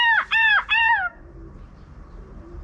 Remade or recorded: remade